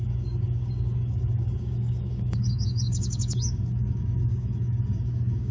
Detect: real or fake fake